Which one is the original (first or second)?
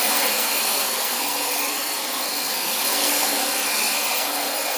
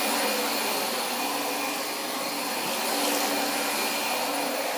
second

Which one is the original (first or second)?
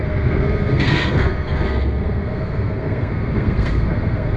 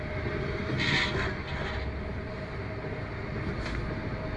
second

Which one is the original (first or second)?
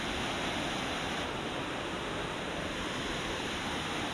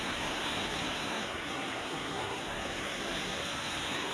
first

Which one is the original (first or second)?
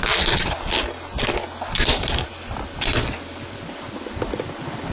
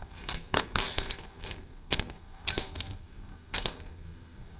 first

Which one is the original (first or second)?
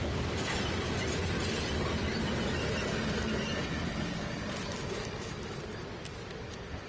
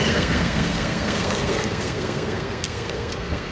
first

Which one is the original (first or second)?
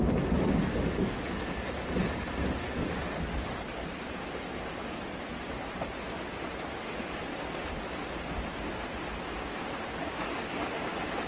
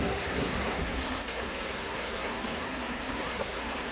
first